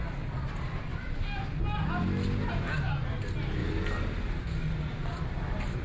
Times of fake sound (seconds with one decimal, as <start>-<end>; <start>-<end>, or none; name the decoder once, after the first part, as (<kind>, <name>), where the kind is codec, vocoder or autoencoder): none